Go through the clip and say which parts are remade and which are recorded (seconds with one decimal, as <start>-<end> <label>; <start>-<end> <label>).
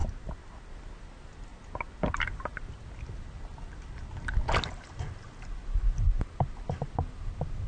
0.0-7.7 recorded